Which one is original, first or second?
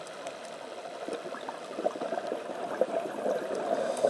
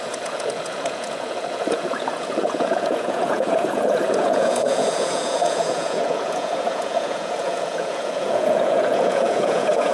first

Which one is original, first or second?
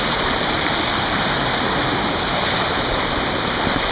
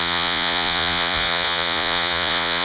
first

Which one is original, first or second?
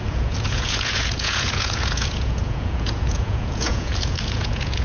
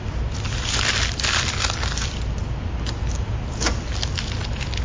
second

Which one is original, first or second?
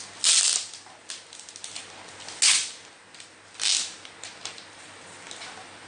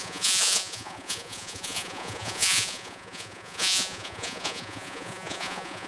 first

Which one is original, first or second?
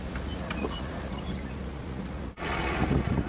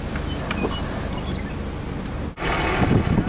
second